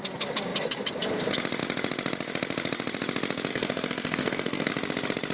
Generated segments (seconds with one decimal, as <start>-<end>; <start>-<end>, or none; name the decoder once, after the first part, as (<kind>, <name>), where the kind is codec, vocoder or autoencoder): 3.5-4.7 (codec, SNAC)